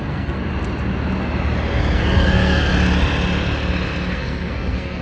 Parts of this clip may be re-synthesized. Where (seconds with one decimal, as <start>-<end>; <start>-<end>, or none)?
0.0-0.4; 1.8-2.7; 4.1-5.0